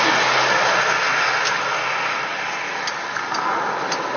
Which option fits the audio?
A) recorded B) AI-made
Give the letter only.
A